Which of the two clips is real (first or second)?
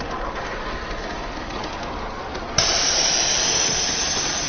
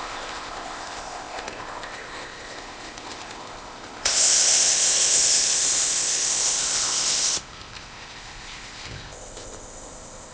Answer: first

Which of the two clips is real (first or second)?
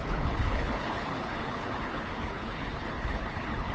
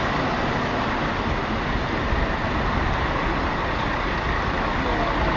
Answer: second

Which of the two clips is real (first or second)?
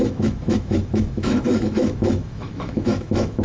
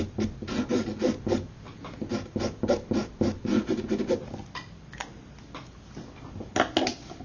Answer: second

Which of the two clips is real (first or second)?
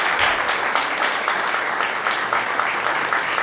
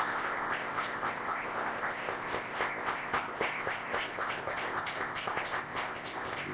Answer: first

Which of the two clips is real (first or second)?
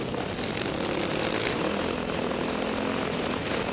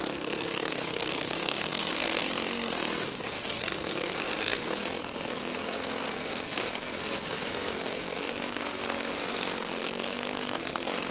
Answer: first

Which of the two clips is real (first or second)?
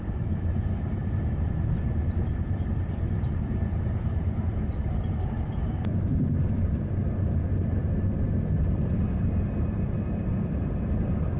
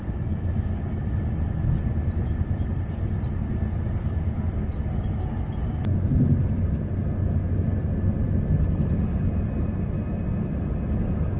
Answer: second